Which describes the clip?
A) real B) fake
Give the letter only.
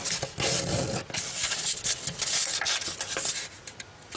A